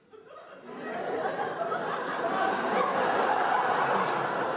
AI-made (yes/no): no